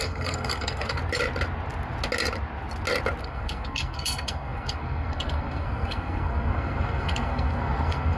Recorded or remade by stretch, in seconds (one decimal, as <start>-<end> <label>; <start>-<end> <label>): 0.0-1.0 remade; 1.0-3.2 recorded; 3.2-8.2 remade